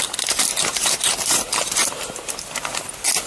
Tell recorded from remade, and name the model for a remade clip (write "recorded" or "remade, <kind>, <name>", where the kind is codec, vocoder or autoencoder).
recorded